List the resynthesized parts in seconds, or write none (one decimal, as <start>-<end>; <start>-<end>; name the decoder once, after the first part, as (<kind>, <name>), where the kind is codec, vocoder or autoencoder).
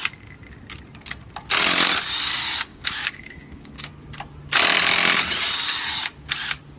2.7-3.9 (codec, DAC)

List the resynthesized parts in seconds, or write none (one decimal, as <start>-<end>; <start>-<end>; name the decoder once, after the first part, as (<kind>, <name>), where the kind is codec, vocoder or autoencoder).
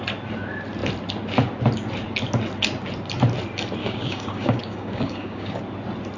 3.8-5.6 (codec, DAC)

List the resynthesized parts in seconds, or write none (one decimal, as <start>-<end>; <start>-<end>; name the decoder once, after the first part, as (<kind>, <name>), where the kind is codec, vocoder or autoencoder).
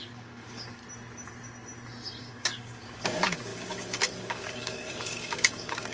0.0-0.8 (codec, DAC); 2.2-5.9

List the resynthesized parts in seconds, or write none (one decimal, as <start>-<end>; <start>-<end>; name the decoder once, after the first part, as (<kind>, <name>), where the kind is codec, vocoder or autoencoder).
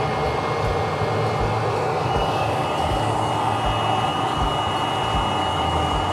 2.0-3.3 (codec, DAC); 4.1-4.7; 5.4-6.1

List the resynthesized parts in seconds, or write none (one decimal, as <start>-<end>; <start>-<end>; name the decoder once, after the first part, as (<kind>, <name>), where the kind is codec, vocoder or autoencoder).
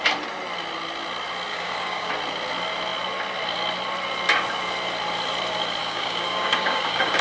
1.5-2.1 (codec, DAC); 5.8-7.2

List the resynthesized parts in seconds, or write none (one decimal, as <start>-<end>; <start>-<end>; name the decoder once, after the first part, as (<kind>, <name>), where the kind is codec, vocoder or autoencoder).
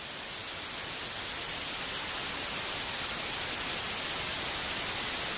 none